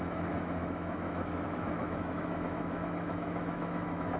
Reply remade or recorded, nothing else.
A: remade